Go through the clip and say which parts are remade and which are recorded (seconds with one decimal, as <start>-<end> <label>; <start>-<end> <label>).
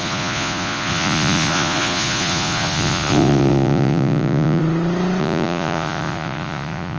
0.0-4.6 remade; 4.6-5.2 recorded; 5.2-7.0 remade